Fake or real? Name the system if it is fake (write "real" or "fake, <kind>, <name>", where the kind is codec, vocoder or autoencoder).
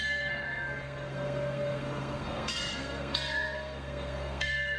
fake, codec, SNAC